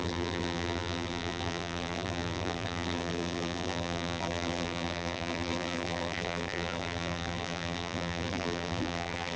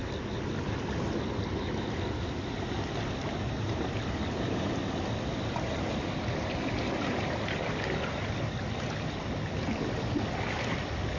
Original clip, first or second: second